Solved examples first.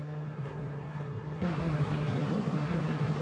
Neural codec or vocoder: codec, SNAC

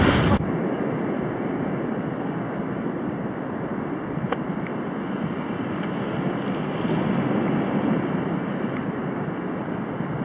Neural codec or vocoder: none